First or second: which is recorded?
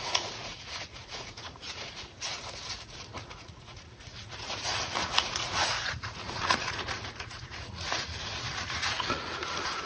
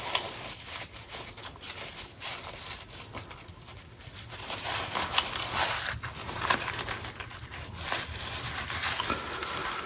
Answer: second